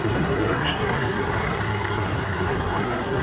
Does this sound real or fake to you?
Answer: fake